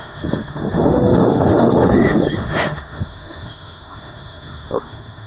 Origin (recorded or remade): remade